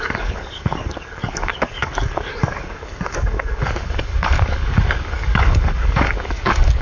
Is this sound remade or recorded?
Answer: remade